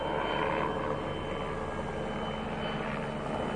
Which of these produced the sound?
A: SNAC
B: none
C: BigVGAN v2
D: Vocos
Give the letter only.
B